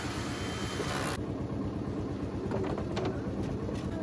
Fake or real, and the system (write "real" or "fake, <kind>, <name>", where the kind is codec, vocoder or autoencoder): real